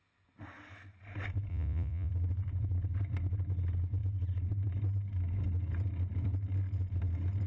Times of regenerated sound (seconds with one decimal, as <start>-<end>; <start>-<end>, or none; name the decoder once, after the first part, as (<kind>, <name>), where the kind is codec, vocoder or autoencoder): 1.5-2.1 (vocoder, Vocos)